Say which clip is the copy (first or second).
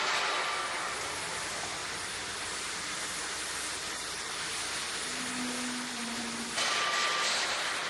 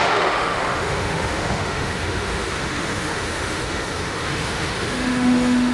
second